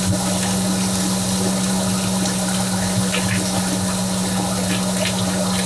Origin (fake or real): real